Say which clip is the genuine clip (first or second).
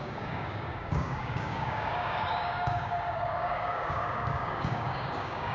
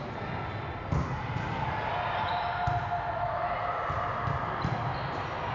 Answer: second